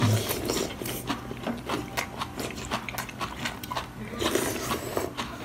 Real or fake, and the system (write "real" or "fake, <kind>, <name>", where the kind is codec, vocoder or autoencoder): real